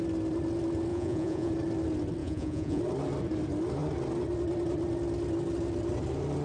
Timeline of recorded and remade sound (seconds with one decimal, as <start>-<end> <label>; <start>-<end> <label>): 0.0-0.9 recorded; 0.9-1.5 remade; 1.5-2.2 recorded; 2.2-2.8 remade; 2.8-6.4 recorded